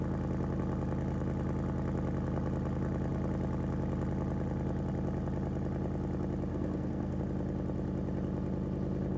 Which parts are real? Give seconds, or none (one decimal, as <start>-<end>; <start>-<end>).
0.0-6.5; 7.2-9.2